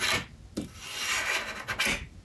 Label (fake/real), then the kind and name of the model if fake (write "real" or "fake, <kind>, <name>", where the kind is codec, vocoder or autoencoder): real